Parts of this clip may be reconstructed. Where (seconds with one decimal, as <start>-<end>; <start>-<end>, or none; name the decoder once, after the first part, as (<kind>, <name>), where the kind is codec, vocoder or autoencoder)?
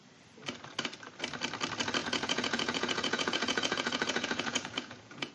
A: 2.0-5.3 (vocoder, Vocos)